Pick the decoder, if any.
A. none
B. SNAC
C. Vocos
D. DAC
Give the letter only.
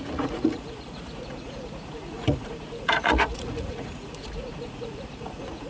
C